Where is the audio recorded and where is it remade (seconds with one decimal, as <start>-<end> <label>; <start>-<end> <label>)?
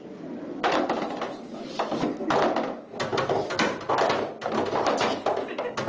0.0-5.9 recorded